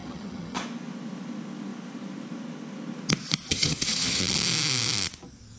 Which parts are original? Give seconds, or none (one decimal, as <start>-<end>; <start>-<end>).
0.6-3.5; 4.2-5.6